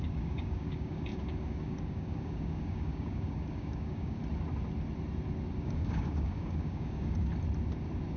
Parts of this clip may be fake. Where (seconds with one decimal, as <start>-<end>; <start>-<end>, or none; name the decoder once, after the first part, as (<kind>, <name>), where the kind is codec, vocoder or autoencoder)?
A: 0.0-4.2 (codec, DAC); 5.6-7.3